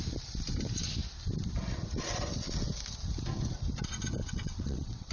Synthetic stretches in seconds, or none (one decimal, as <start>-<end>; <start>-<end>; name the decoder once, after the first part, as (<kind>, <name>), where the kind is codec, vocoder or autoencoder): 4.2-5.1 (vocoder, WaveNeXt)

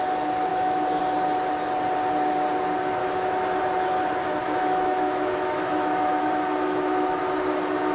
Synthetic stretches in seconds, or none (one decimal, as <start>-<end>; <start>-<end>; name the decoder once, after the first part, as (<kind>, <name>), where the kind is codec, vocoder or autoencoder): 0.5-1.0 (autoencoder, DAC-VAE); 3.0-3.6; 4.2-7.2

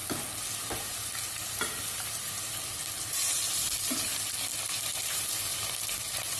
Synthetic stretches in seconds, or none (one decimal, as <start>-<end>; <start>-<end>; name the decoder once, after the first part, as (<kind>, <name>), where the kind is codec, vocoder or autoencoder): 0.6-4.1 (vocoder, BigVGAN v2); 5.0-5.5; 6.0-6.4